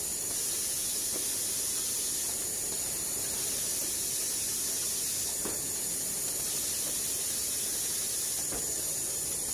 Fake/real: real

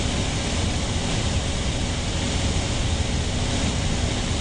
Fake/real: real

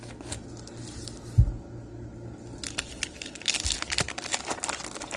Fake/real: real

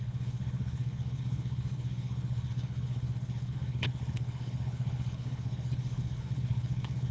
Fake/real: fake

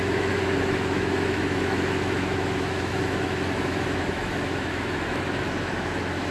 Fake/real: fake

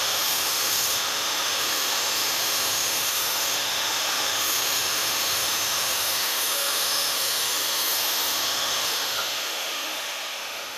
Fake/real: fake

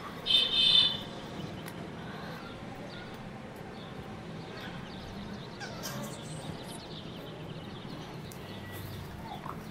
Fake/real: fake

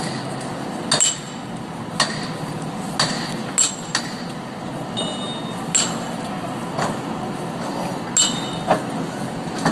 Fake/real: real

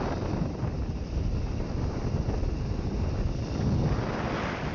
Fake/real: real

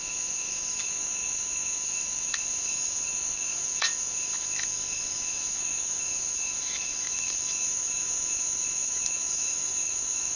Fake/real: fake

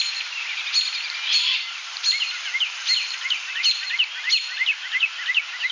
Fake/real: real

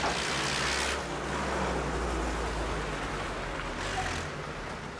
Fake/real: real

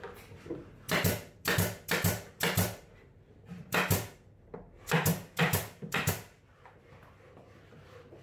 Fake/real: real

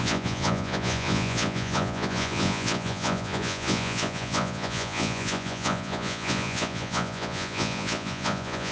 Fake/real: fake